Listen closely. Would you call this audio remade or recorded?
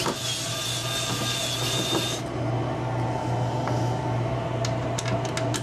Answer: recorded